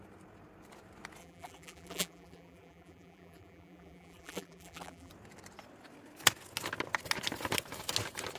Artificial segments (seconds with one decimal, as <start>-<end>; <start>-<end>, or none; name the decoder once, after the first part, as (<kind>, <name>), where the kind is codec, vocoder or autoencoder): 1.2-5.1 (vocoder, BigVGAN v2)